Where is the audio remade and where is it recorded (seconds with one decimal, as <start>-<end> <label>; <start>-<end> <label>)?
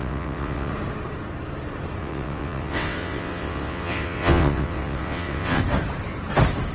0.0-0.7 remade; 0.7-2.0 recorded; 2.0-5.6 remade; 5.6-6.7 recorded